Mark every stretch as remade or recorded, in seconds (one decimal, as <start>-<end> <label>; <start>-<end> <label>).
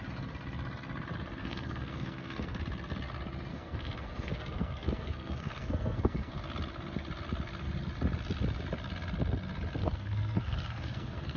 0.0-1.4 recorded; 1.4-2.6 remade; 2.6-3.5 recorded; 3.5-6.3 remade; 6.3-9.8 recorded; 9.8-11.4 remade